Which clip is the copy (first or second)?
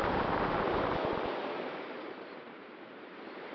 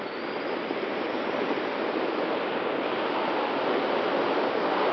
first